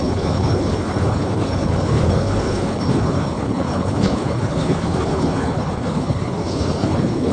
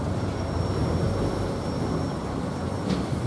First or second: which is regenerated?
first